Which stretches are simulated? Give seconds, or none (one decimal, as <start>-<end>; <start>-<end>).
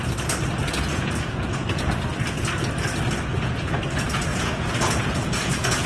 0.6-2.0; 3.3-3.8; 4.3-5.9